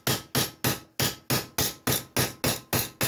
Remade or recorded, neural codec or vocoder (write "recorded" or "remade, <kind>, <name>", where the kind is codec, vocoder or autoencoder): recorded